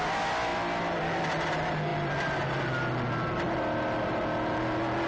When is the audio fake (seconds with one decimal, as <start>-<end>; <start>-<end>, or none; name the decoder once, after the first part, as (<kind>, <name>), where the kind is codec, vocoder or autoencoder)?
none